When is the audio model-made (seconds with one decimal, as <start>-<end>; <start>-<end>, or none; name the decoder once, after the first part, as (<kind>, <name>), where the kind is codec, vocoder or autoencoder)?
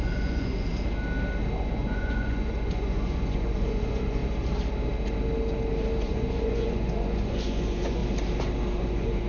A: 0.0-0.7 (vocoder, Vocos); 1.7-4.2; 6.0-8.0; 8.8-9.3